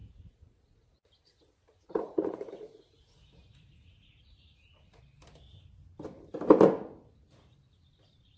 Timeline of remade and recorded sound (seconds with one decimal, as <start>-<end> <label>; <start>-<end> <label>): 0.0-5.0 remade; 5.0-8.4 recorded